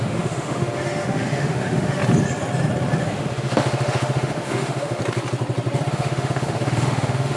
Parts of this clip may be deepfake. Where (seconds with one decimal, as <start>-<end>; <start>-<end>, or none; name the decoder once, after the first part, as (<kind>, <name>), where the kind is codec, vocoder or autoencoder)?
0.0-2.0 (autoencoder, DAC-VAE); 3.0-5.0; 5.9-7.4